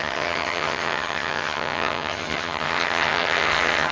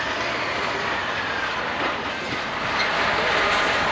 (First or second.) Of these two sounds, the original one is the second